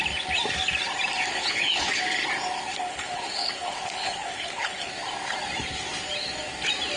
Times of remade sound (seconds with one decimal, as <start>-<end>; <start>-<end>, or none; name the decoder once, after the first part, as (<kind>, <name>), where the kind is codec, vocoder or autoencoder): 1.3-2.0 (codec, HILCodec); 2.7-4.9